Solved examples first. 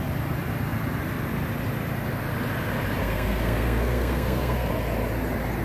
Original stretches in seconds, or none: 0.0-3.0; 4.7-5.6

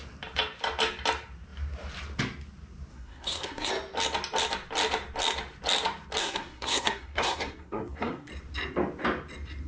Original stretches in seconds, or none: 0.0-2.9; 3.7-6.2; 8.3-9.7

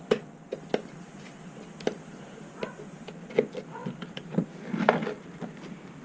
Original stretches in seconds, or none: 0.0-6.0

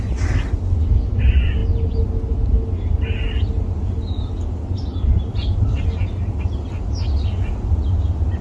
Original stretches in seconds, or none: 0.0-8.4